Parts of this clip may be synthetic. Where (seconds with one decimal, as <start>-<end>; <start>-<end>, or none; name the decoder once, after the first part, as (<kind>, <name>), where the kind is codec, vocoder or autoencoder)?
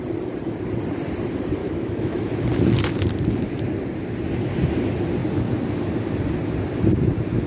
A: 1.6-2.3 (autoencoder, DAC-VAE)